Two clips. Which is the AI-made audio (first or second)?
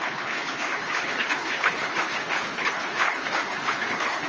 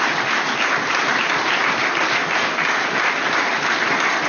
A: first